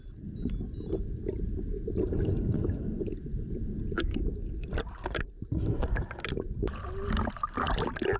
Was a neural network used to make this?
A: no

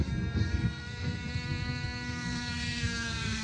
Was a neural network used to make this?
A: yes